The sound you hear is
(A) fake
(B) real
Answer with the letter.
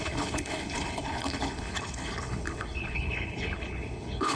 A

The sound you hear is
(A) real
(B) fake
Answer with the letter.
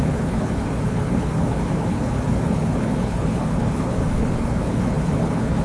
B